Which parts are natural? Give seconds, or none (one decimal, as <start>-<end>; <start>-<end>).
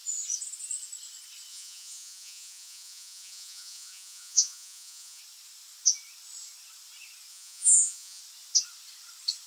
0.0-1.5; 5.2-7.3; 8.2-9.5